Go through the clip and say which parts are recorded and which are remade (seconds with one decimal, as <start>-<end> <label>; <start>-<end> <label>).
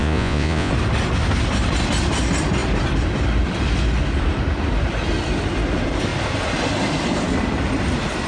0.0-0.7 remade; 0.7-8.3 recorded